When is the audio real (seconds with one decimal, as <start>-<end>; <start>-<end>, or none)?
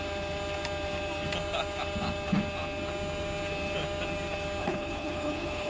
0.0-4.6